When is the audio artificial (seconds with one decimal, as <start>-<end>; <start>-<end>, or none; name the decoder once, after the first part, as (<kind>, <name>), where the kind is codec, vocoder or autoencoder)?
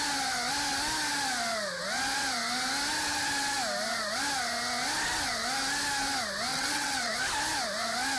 6.5-7.1 (vocoder, WaveNeXt)